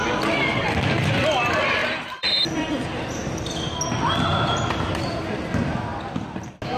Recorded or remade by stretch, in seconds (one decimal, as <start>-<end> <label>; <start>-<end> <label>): 0.0-1.8 recorded; 1.8-2.3 remade; 2.3-3.2 recorded; 3.2-3.7 remade; 3.7-6.8 recorded